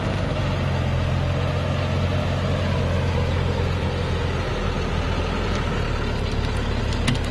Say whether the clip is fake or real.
real